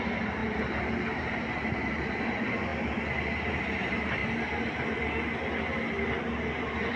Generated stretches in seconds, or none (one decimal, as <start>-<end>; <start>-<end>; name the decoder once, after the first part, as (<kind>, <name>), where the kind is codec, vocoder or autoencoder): 0.0-2.7 (vocoder, BigVGAN v2); 3.6-4.2; 6.6-7.0